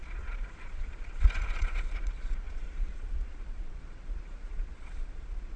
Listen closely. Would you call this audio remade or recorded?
remade